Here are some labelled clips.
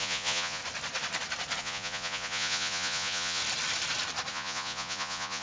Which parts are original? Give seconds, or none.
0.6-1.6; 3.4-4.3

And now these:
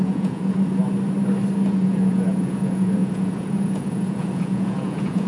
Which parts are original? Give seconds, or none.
0.8-1.7

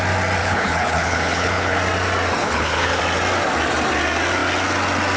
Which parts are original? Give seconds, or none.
0.0-0.4; 1.8-2.4; 3.0-5.2